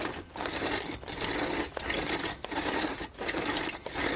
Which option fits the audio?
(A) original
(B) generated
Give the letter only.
A